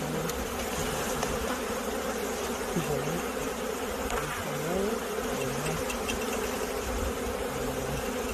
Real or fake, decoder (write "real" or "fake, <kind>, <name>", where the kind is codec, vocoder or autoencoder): real